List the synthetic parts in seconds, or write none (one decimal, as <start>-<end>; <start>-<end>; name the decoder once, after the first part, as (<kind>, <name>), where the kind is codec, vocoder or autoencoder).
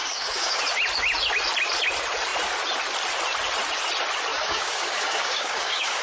0.0-0.6 (codec, DAC); 4.3-6.0